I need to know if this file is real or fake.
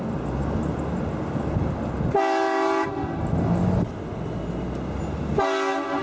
real